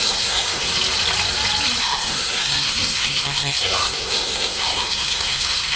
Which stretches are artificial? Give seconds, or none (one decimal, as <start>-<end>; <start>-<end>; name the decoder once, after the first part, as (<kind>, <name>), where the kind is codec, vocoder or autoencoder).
0.0-0.7 (codec, SNAC); 1.8-5.8